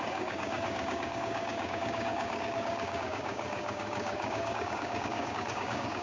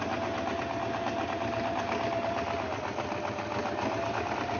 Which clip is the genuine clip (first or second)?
second